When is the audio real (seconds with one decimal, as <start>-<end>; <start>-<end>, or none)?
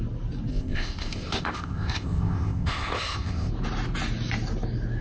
0.0-0.5; 3.5-5.0